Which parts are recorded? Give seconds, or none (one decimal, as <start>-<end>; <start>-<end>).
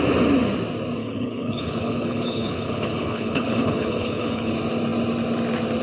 0.0-1.0; 4.5-5.8